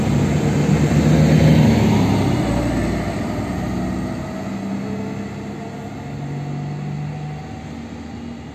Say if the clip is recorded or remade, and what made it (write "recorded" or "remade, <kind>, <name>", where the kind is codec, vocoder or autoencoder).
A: recorded